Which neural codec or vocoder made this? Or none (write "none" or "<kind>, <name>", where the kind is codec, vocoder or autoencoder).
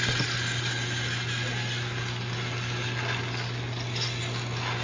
none